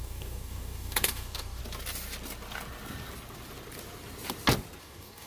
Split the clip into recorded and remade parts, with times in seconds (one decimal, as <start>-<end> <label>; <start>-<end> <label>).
0.0-1.6 remade; 1.6-4.8 recorded; 4.8-5.3 remade